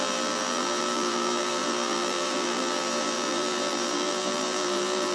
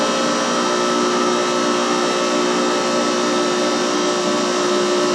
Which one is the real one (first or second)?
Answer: second